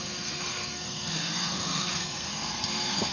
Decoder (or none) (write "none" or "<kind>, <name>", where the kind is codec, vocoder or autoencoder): codec, SNAC